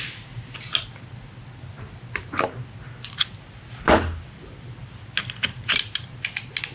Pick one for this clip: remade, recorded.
recorded